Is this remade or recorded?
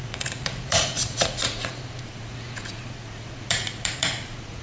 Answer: remade